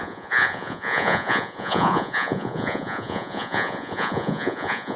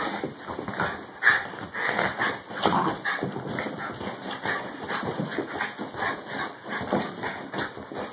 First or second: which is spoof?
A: first